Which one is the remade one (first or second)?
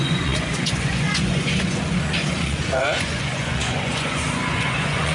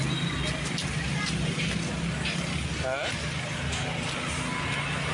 first